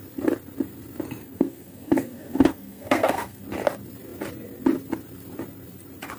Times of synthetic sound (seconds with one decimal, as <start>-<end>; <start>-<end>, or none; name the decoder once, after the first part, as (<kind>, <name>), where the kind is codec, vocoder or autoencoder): 1.2-3.4 (codec, SNAC)